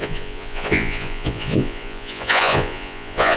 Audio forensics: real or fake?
fake